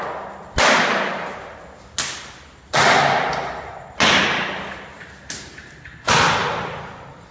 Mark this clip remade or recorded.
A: recorded